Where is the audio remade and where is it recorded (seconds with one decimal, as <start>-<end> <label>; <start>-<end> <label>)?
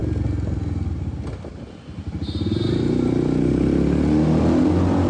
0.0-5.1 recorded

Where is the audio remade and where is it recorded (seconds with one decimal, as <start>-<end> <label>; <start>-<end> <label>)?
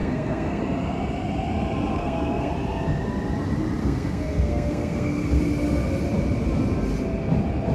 0.0-0.6 remade; 0.6-1.9 recorded; 1.9-2.5 remade; 2.5-3.8 recorded; 3.8-5.4 remade; 5.4-7.7 recorded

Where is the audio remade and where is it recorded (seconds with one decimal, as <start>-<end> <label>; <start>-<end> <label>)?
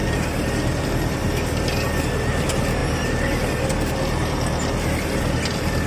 0.0-5.9 recorded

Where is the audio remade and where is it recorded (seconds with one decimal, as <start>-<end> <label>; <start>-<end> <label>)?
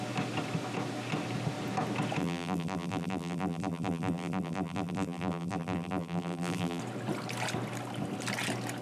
0.0-2.2 recorded; 2.2-6.8 remade; 6.8-8.8 recorded